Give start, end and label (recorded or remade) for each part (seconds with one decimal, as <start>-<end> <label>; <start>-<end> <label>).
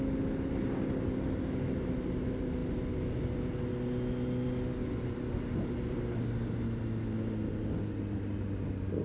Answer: 0.0-9.0 recorded